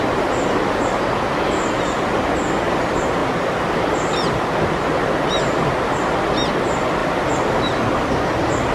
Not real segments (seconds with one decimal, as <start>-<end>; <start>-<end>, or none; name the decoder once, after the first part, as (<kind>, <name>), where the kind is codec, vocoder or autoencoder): 3.2-4.5 (vocoder, BigVGAN v2); 7.0-7.6